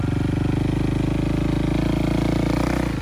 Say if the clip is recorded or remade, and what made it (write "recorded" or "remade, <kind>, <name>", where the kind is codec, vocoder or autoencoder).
recorded